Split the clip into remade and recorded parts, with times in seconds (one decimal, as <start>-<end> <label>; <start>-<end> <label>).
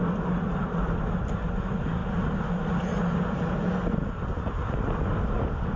0.0-5.8 recorded